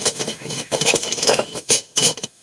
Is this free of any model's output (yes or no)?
no